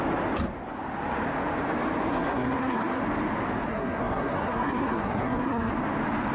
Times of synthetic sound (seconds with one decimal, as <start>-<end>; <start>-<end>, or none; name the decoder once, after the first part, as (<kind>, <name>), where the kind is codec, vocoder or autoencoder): 2.1-3.0 (codec, SNAC); 3.7-5.7